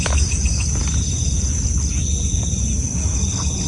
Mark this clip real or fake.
real